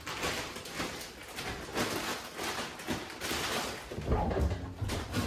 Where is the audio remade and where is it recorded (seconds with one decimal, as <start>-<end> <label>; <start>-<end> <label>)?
0.0-5.3 recorded